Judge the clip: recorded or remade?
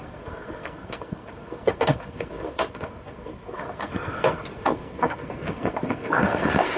remade